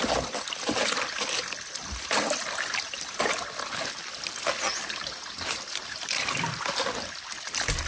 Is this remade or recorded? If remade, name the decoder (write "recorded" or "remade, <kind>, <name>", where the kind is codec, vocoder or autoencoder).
recorded